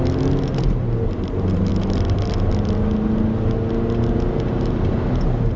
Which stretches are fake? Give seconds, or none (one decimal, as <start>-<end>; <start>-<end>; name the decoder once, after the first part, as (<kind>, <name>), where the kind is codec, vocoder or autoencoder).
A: none